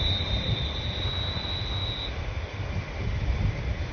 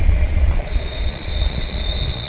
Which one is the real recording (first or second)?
first